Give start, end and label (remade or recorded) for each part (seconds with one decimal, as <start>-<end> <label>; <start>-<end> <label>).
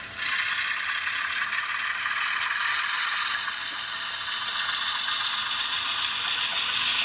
0.0-6.5 recorded; 6.5-7.0 remade